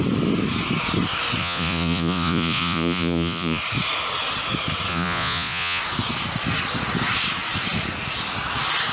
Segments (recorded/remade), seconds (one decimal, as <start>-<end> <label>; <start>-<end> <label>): 0.0-1.4 recorded; 1.4-3.6 remade; 3.6-4.9 recorded; 4.9-5.8 remade; 5.8-8.9 recorded